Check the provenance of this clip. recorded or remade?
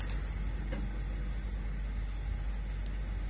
recorded